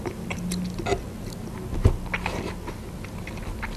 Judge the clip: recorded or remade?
recorded